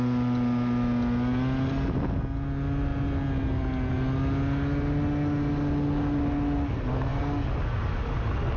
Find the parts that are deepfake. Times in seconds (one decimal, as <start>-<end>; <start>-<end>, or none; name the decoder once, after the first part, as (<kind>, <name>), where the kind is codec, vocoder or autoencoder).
none